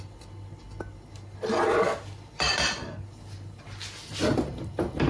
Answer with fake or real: real